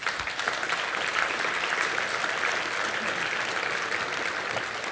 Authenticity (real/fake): real